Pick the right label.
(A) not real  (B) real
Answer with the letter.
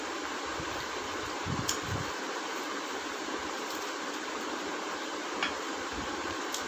A